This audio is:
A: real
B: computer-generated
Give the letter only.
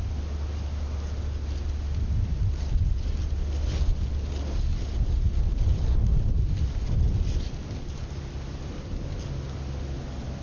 A